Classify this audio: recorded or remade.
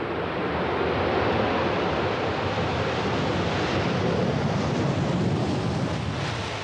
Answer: remade